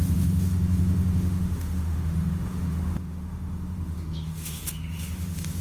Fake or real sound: fake